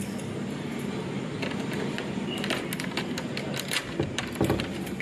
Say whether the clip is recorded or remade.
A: recorded